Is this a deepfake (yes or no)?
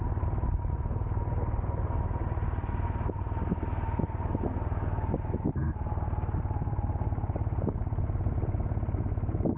no